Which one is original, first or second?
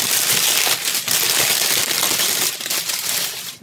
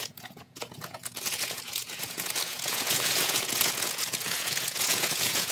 first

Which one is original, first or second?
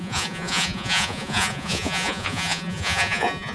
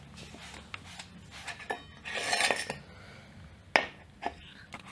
second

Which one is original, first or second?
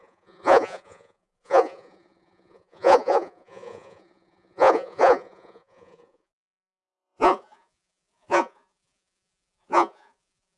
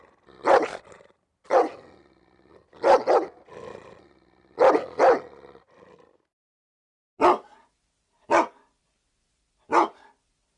second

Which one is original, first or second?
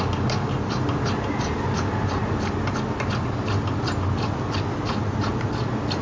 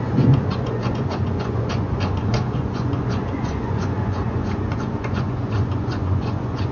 first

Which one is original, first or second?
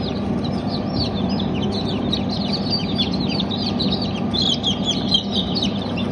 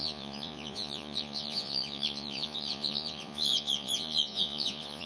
first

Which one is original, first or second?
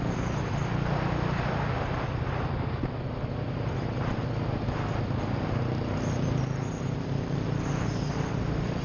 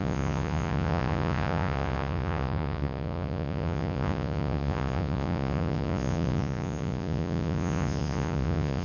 first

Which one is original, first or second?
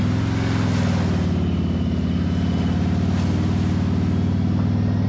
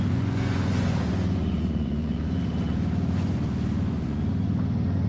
first